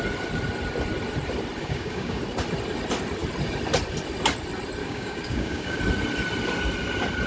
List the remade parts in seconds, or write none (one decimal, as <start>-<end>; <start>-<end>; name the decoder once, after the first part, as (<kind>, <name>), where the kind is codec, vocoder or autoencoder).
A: 1.6-2.2 (codec, DAC); 4.8-5.8